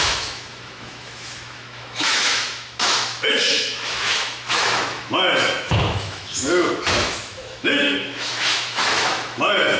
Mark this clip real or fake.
fake